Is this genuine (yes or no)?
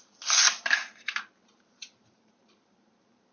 no